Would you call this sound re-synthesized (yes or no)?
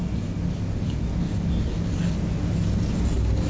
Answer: no